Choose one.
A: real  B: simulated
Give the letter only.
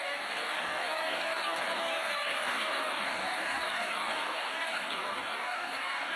B